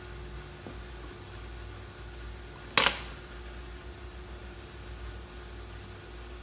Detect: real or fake real